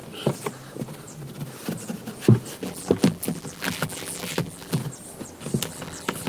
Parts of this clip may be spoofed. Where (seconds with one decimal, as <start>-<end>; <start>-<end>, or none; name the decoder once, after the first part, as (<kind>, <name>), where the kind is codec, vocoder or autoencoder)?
2.6-4.8 (vocoder, BigVGAN v2); 5.6-6.3